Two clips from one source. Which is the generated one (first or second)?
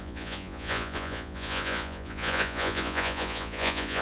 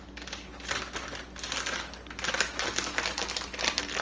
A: first